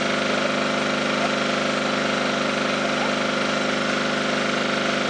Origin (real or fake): real